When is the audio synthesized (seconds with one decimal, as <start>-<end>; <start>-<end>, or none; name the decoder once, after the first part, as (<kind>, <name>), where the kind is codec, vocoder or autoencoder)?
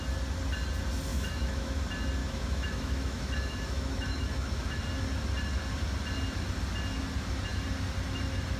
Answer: 1.1-1.8 (autoencoder, DAC-VAE); 2.2-4.8